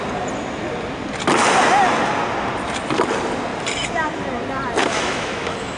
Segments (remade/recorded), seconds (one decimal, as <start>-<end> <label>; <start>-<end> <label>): 0.0-4.8 recorded; 4.8-5.8 remade